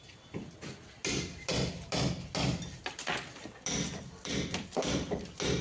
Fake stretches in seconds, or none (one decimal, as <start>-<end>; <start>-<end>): none